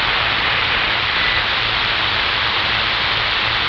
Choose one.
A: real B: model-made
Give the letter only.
A